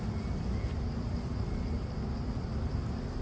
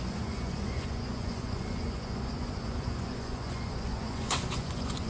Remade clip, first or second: second